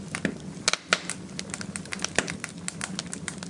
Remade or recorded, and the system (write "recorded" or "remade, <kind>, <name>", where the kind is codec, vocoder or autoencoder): recorded